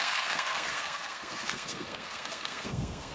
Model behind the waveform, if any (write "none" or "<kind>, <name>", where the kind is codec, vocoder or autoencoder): codec, SNAC